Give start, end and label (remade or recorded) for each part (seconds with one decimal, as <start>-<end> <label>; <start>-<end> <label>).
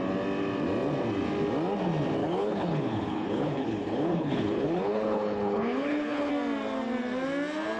0.0-2.2 recorded; 2.2-6.3 remade; 6.3-7.8 recorded